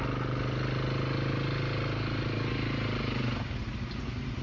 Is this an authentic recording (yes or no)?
yes